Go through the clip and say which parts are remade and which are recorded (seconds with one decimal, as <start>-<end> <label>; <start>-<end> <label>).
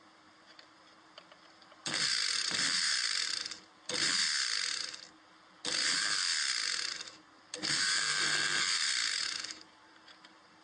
0.0-4.2 remade; 4.2-7.7 recorded; 7.7-10.6 remade